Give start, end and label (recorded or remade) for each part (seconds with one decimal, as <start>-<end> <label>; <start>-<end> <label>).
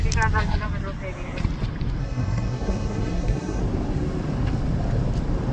0.0-2.0 recorded; 2.0-3.6 remade; 3.6-5.5 recorded